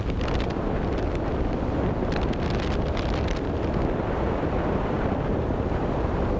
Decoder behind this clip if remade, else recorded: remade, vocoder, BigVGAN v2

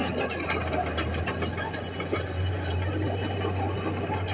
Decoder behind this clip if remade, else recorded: recorded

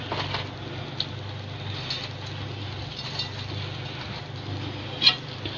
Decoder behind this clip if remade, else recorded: recorded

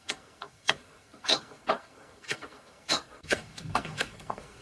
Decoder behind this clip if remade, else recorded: remade, codec, SNAC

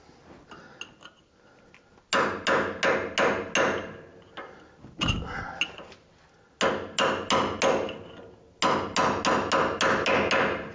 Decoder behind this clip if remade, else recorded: recorded